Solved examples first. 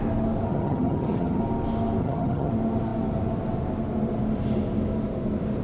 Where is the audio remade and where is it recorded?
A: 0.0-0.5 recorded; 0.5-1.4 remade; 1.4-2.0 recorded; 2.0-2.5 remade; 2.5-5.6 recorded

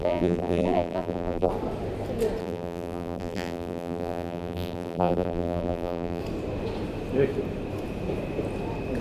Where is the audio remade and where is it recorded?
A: 0.0-1.5 remade; 1.5-2.4 recorded; 2.4-6.2 remade; 6.2-9.0 recorded

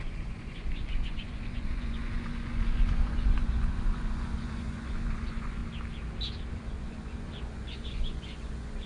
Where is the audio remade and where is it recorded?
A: 0.0-5.6 remade; 5.6-6.5 recorded; 6.5-8.9 remade

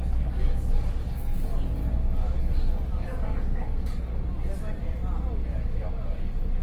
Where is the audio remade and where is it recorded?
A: 0.0-1.8 remade; 1.8-2.4 recorded; 2.4-4.1 remade; 4.1-6.6 recorded

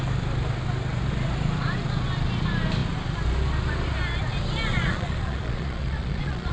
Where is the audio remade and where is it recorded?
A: 0.0-4.7 recorded; 4.7-6.5 remade

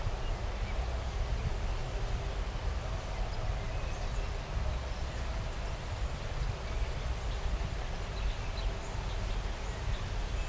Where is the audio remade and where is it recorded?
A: 0.0-10.5 recorded

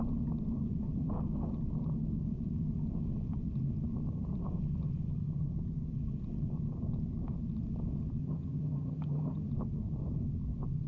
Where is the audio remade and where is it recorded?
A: 0.0-8.2 recorded; 8.2-9.5 remade; 9.5-10.9 recorded

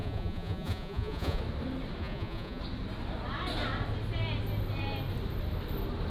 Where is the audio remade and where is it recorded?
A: 0.0-1.4 remade; 1.4-2.0 recorded; 2.0-2.6 remade; 2.6-6.1 recorded